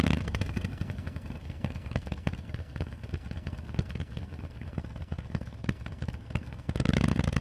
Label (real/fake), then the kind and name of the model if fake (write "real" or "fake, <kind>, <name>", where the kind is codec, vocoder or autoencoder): fake, codec, SNAC